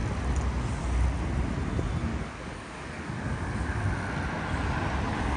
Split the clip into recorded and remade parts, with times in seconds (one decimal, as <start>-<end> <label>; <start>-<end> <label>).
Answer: 0.0-2.1 recorded; 2.1-3.8 remade; 3.8-5.4 recorded